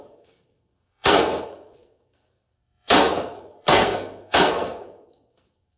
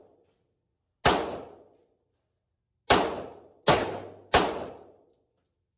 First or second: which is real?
second